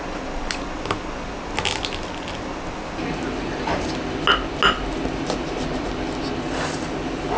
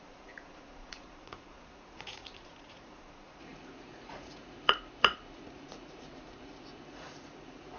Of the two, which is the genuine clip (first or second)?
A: first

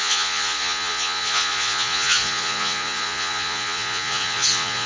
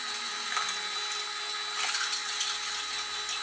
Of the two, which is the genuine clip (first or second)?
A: second